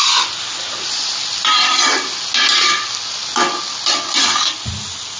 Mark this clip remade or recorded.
recorded